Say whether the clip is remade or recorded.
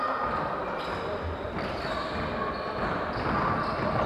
recorded